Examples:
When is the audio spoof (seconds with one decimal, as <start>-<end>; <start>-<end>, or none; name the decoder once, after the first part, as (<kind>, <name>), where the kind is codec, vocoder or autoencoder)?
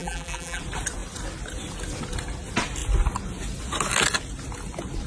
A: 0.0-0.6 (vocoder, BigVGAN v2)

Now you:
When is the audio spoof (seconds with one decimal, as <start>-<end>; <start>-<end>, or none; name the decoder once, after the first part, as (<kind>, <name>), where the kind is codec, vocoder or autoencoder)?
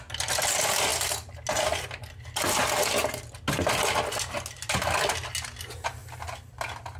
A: 6.0-7.0 (vocoder, BigVGAN v2)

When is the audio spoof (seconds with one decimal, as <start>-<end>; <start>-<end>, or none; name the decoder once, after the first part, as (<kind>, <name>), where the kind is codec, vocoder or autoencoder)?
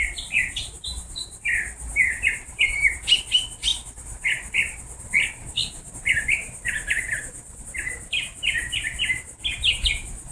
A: 1.9-2.9 (vocoder, BigVGAN v2); 3.7-4.8; 5.6-7.2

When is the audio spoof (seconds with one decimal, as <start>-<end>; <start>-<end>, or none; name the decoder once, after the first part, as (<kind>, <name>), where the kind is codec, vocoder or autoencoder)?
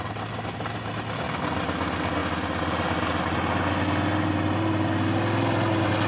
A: none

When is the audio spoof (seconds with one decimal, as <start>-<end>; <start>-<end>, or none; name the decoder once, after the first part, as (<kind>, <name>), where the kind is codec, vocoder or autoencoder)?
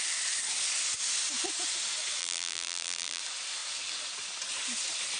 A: 2.2-3.2 (vocoder, BigVGAN v2)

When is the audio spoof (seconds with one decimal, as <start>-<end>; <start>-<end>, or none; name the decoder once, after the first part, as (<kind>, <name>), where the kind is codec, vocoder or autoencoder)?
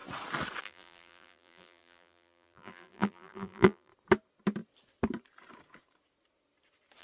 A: 0.6-3.9 (vocoder, BigVGAN v2)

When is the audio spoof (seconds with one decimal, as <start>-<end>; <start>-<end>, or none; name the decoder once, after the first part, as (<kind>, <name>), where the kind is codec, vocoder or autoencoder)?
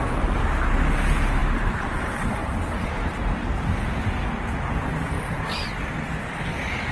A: 2.4-3.6 (vocoder, BigVGAN v2)